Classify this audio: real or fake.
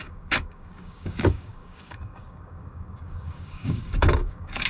fake